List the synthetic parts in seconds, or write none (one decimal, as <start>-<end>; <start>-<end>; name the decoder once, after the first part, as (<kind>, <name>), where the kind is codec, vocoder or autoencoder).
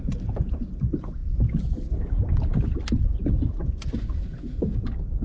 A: 0.0-1.2 (vocoder, BigVGAN v2); 3.9-5.2